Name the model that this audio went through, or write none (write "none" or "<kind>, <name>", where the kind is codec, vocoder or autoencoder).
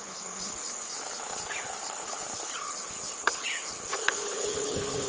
codec, HILCodec